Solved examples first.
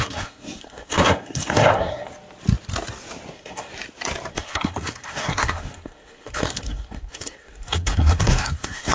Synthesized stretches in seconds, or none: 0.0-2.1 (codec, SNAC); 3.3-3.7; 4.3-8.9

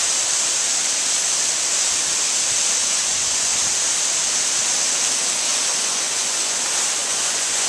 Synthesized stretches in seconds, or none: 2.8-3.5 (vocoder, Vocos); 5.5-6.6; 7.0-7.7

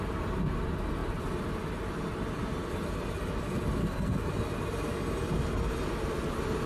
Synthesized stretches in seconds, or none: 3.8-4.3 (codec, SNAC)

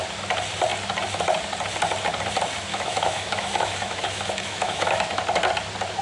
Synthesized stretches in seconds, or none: 2.7-5.2 (autoencoder, DAC-VAE)

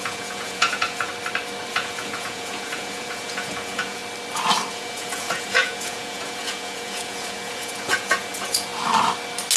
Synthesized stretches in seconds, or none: 0.0-1.1 (vocoder, Vocos); 1.7-4.0; 4.7-8.7